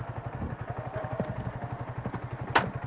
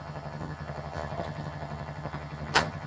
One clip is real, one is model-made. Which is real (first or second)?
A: first